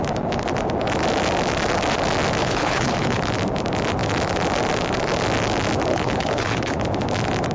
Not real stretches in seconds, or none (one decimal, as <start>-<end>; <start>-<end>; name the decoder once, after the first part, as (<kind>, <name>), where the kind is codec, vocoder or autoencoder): 2.4-3.3 (codec, HILCodec); 5.9-6.8